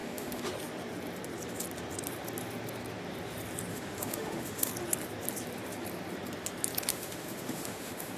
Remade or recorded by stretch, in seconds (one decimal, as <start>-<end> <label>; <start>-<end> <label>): 0.0-0.5 remade; 0.5-3.7 recorded; 3.7-4.7 remade; 4.7-6.9 recorded; 6.9-8.2 remade